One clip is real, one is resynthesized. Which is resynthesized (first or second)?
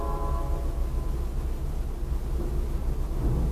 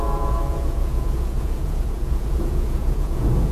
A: second